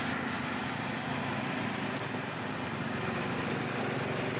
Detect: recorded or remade recorded